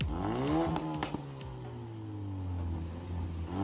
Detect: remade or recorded recorded